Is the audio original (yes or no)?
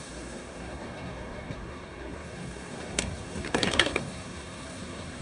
no